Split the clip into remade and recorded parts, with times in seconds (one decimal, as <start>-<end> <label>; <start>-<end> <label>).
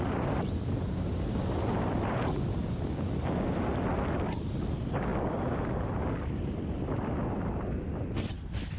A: 0.0-8.8 recorded